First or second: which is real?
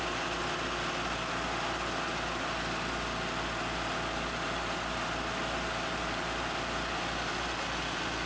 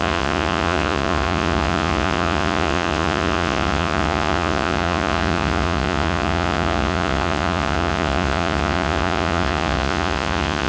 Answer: first